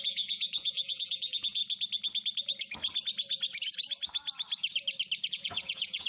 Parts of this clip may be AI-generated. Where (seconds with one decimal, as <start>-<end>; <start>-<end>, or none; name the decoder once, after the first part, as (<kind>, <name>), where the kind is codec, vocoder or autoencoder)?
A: 0.0-1.6 (vocoder, Vocos); 5.3-6.1